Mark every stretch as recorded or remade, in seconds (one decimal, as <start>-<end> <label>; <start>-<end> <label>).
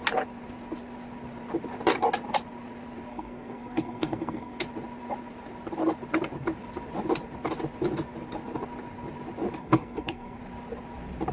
0.0-3.1 recorded; 3.1-4.6 remade; 4.6-9.6 recorded; 9.6-10.4 remade; 10.4-11.3 recorded